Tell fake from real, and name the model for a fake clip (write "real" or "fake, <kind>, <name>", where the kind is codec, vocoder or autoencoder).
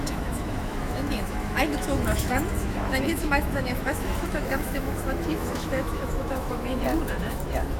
fake, autoencoder, DAC-VAE